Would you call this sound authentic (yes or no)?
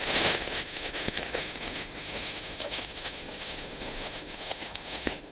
no